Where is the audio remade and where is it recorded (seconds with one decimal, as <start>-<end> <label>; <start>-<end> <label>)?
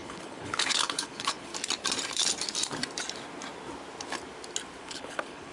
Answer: 0.0-1.5 remade; 1.5-4.8 recorded; 4.8-5.5 remade